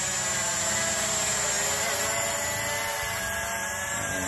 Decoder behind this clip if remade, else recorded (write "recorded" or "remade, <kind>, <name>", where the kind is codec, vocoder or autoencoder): recorded